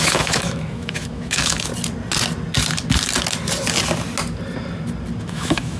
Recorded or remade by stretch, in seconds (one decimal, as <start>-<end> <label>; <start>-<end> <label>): 0.0-1.7 remade; 1.7-5.2 recorded; 5.2-5.8 remade